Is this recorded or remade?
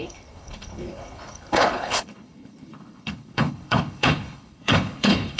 remade